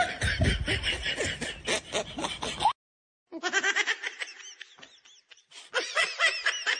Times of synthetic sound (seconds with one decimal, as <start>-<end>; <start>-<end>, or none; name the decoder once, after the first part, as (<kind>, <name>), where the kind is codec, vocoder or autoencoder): 5.3-6.1 (vocoder, Vocos)

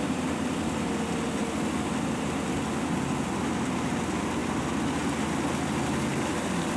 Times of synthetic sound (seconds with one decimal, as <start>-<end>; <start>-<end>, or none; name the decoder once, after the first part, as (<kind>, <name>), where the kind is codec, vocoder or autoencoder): none

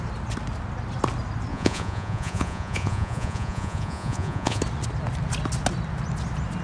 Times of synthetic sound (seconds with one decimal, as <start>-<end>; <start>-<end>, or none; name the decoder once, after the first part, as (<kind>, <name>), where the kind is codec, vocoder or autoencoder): 1.5-4.6 (vocoder, Vocos)

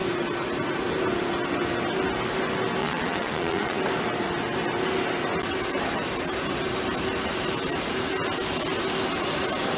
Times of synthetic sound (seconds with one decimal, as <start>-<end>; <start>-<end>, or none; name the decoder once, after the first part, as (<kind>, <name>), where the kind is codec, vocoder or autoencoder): 2.8-3.8 (vocoder, Vocos)

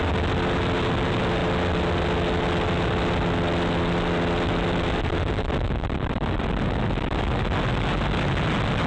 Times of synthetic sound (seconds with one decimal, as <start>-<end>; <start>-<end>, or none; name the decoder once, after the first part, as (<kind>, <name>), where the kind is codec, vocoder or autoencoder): none